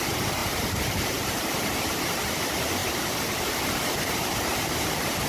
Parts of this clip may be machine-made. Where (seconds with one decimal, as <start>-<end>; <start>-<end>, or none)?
0.0-5.3